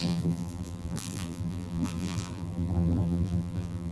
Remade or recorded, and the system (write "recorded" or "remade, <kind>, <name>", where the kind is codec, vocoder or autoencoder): remade, vocoder, BigVGAN v2